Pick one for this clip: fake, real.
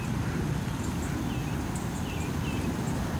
real